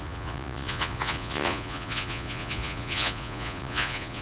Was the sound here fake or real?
fake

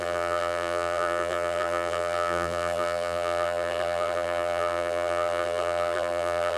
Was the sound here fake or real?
fake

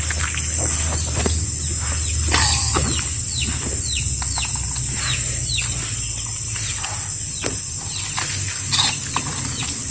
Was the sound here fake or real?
real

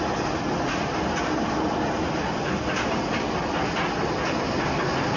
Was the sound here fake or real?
real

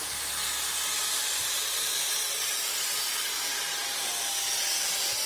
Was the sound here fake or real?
real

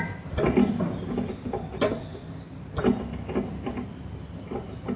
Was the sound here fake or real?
real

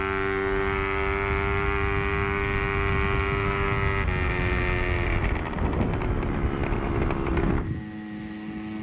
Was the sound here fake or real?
real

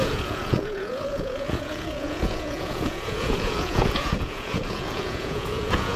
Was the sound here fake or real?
fake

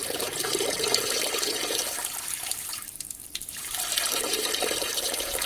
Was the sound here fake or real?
fake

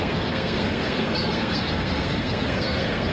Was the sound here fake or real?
fake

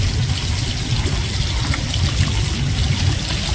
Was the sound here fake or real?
real